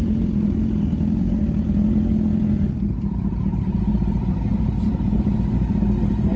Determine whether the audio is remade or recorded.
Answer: recorded